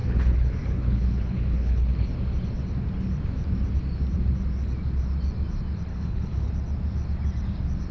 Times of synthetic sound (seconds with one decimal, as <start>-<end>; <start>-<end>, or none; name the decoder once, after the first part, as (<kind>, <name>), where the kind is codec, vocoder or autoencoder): 0.0-2.1 (codec, HILCodec); 5.9-6.5